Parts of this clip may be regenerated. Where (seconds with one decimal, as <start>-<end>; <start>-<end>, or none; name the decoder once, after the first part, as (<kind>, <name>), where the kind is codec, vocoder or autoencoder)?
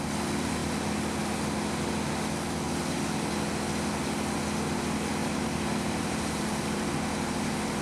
5.2-6.9 (vocoder, BigVGAN v2)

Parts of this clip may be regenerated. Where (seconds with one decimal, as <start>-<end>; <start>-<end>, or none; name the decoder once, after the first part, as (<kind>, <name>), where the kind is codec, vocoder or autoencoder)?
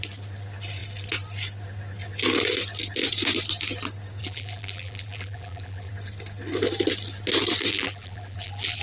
4.2-5.9 (vocoder, BigVGAN v2); 7.7-8.8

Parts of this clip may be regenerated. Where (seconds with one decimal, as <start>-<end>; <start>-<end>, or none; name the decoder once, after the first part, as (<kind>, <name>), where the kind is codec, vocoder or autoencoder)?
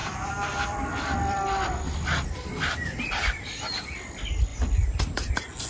0.0-3.4 (vocoder, BigVGAN v2); 4.5-5.3